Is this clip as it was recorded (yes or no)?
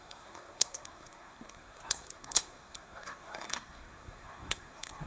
no